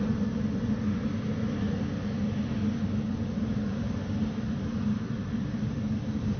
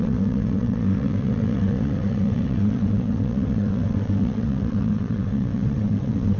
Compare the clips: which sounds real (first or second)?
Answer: first